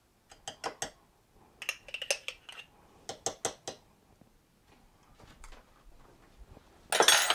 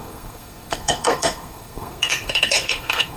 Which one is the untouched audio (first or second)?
first